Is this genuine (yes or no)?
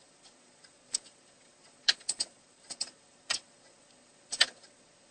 no